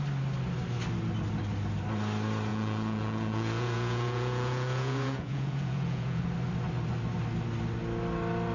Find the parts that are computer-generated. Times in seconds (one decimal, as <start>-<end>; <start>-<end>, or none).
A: 2.5-6.2